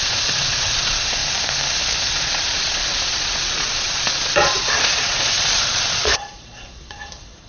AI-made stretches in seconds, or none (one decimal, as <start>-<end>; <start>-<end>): 0.0-1.2; 2.0-7.5

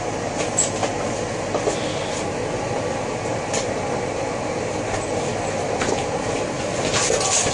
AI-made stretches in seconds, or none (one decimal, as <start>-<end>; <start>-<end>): none

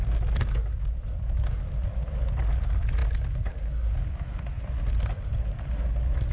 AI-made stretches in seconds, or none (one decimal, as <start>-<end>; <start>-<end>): none

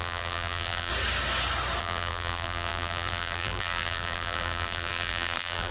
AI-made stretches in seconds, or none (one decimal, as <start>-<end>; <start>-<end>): 0.0-0.9; 1.8-5.7

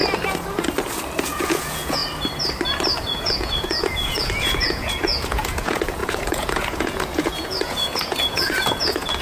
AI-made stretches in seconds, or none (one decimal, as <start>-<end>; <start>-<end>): 1.2-2.0; 3.0-9.2

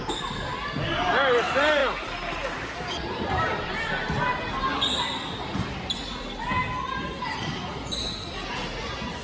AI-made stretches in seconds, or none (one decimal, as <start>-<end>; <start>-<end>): none